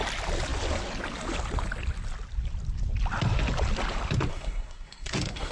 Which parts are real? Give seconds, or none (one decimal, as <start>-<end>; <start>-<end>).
0.0-4.3